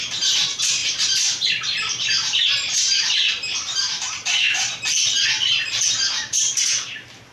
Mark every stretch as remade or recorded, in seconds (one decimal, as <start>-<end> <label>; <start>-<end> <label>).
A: 0.0-4.7 remade; 4.7-6.3 recorded; 6.3-7.3 remade